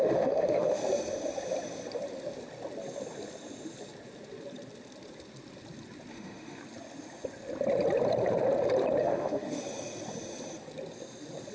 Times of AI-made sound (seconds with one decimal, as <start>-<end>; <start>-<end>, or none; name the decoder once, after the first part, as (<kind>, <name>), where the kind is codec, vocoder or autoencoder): 0.0-0.8 (autoencoder, DAC-VAE); 6.1-6.6; 9.0-9.6